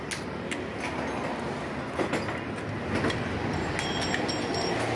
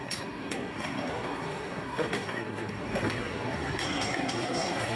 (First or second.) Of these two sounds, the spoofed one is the second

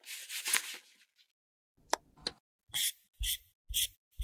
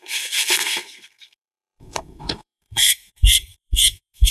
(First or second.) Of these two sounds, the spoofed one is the second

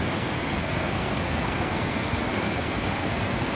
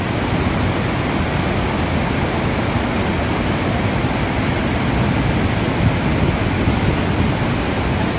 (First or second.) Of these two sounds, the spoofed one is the first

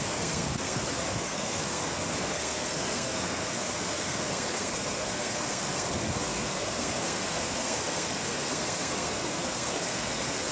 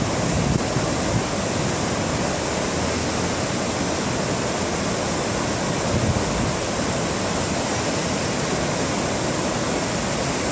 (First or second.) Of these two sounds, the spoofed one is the first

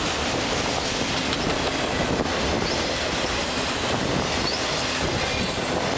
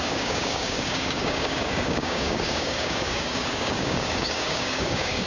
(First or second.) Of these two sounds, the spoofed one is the second